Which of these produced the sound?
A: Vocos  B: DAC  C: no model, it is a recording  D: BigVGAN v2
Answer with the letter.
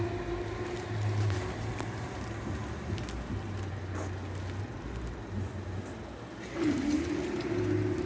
C